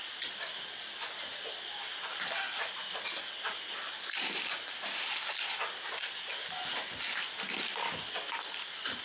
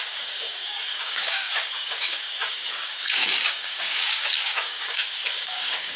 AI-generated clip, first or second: second